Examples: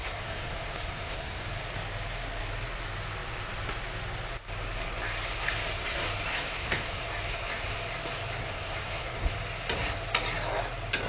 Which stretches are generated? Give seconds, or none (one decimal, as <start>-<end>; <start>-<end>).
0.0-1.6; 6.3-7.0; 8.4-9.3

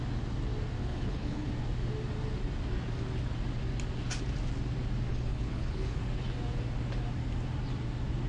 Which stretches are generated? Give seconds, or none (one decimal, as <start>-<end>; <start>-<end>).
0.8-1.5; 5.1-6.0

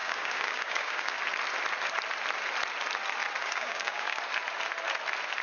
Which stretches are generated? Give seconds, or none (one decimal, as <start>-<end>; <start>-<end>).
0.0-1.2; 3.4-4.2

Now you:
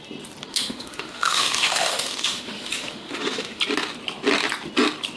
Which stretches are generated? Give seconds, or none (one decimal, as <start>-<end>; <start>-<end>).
0.5-3.6

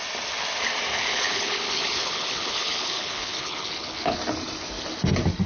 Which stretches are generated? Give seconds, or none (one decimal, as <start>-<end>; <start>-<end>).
0.9-4.2